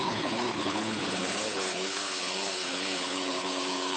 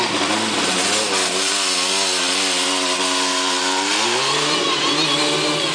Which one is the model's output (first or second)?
first